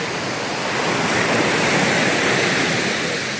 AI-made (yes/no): no